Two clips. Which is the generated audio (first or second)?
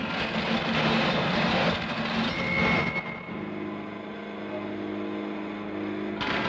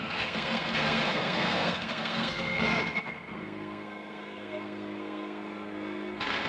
second